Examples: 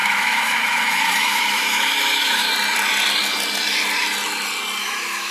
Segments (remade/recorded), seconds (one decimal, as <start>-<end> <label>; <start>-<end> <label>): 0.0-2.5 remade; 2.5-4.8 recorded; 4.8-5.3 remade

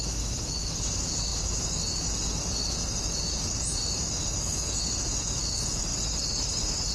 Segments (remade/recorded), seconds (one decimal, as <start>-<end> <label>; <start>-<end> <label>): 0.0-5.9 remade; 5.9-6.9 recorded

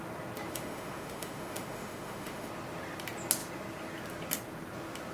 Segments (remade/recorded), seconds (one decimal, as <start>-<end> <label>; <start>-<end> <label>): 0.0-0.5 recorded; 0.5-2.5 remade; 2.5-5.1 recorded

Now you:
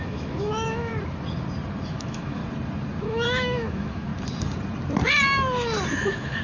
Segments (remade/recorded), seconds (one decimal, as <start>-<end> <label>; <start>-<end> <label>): 0.0-0.9 remade; 0.9-1.9 recorded; 1.9-2.4 remade; 2.4-3.0 recorded; 3.0-4.1 remade; 4.1-5.9 recorded; 5.9-6.4 remade